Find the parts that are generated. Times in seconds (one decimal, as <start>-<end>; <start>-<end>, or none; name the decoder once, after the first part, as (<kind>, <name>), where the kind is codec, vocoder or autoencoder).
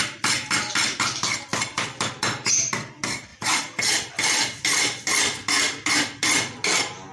1.5-2.1 (vocoder, BigVGAN v2); 3.3-4.3